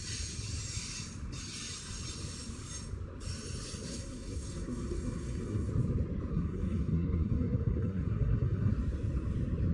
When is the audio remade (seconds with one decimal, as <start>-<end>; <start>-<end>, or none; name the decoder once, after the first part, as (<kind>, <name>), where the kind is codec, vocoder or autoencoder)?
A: 3.9-5.7 (codec, SNAC); 6.3-8.7